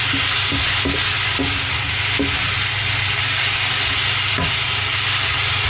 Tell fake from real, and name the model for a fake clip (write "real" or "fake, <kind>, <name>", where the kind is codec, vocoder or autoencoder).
real